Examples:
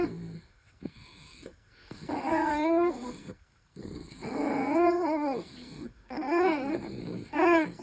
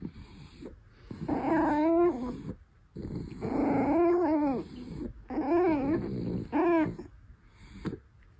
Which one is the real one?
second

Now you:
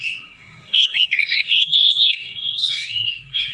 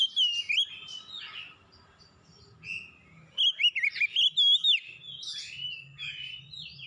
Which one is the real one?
second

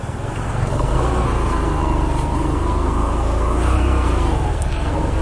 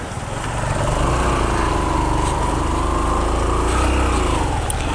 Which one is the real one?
second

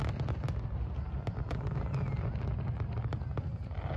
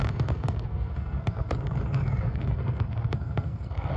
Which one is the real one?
first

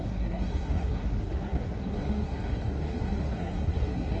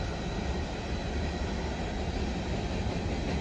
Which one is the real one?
second